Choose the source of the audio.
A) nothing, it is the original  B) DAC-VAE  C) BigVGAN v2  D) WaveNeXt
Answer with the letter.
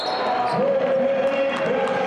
A